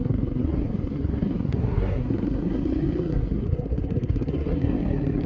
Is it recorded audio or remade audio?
remade